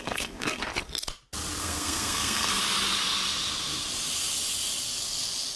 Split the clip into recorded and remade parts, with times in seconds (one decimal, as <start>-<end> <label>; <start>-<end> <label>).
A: 0.0-0.7 remade; 0.7-1.6 recorded; 1.6-2.6 remade; 2.6-5.6 recorded